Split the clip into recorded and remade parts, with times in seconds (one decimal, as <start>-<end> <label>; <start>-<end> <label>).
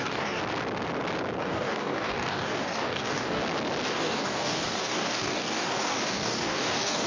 0.0-0.4 remade; 0.4-1.4 recorded; 1.4-3.4 remade; 3.4-3.9 recorded; 3.9-7.1 remade